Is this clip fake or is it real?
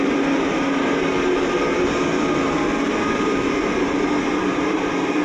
real